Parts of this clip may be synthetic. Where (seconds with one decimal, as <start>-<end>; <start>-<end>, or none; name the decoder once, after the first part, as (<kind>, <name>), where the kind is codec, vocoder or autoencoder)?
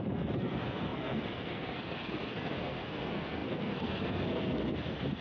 0.0-5.2 (codec, SNAC)